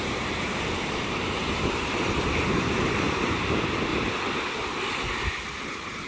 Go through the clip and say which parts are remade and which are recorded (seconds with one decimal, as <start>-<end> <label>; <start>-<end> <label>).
0.0-3.9 remade; 3.9-5.2 recorded; 5.2-6.1 remade